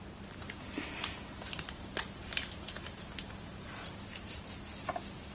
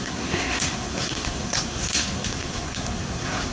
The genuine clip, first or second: first